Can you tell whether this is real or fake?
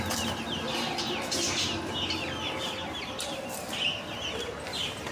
fake